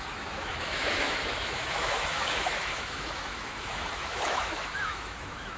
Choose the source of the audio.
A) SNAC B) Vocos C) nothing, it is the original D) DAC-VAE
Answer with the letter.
D